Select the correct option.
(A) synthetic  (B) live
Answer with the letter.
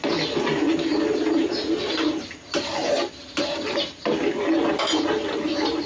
B